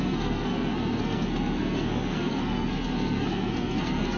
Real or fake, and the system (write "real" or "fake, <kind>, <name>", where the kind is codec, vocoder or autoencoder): fake, codec, SNAC